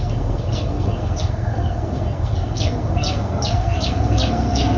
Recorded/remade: remade